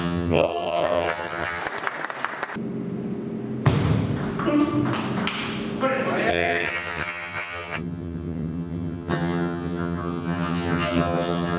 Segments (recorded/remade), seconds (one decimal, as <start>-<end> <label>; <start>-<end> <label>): 0.0-1.6 remade; 1.6-6.3 recorded; 6.3-11.6 remade